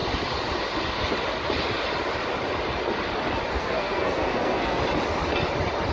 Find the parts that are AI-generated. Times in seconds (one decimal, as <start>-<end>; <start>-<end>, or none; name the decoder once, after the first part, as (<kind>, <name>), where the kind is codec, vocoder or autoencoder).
3.5-4.8 (codec, SNAC)